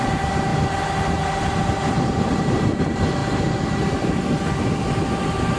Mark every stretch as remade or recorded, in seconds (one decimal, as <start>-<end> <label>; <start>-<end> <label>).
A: 0.0-5.6 recorded

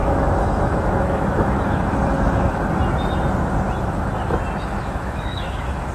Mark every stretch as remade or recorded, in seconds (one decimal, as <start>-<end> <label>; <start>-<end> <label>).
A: 0.0-2.6 remade; 2.6-4.6 recorded; 4.6-5.9 remade

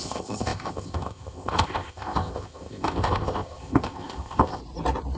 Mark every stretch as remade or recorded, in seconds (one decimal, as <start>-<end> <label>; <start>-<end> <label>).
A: 0.0-4.6 remade; 4.6-5.2 recorded

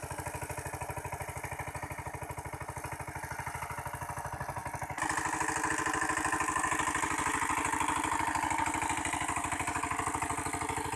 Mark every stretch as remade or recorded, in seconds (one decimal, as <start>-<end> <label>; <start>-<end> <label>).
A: 0.0-11.0 recorded

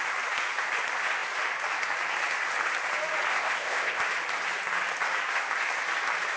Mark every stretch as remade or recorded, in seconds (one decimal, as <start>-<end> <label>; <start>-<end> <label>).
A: 0.0-3.3 recorded; 3.3-4.0 remade; 4.0-6.4 recorded

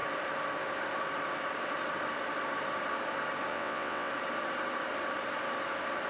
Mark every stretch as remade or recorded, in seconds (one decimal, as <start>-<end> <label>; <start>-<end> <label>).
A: 0.0-3.5 recorded; 3.5-4.1 remade; 4.1-6.1 recorded

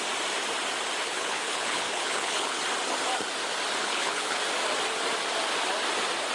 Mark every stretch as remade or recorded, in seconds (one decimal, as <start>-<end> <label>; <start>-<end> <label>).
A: 0.0-1.0 recorded; 1.0-2.6 remade; 2.6-3.8 recorded; 3.8-4.4 remade; 4.4-6.3 recorded

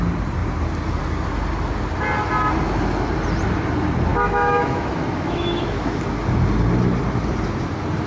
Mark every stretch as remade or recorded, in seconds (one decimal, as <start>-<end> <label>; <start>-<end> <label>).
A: 0.0-4.1 recorded; 4.1-6.0 remade; 6.0-8.1 recorded